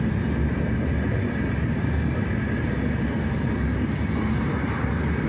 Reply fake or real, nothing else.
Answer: real